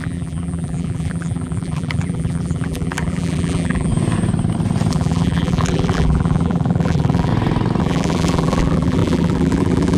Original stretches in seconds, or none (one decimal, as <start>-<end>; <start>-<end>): 3.9-4.9; 7.3-7.8